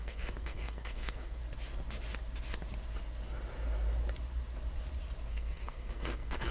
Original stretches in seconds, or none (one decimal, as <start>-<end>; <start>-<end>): 1.4-5.3